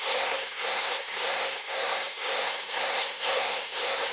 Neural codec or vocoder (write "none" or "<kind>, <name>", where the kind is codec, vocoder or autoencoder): codec, SNAC